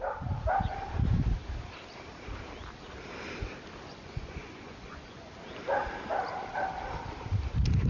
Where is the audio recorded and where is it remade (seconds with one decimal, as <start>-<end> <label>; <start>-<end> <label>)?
0.0-3.9 recorded; 3.9-5.3 remade; 5.3-7.9 recorded